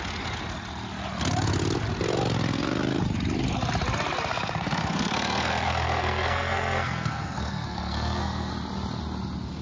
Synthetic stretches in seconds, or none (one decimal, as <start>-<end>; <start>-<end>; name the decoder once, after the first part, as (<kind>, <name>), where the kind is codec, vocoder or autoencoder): 4.3-8.5 (codec, SNAC)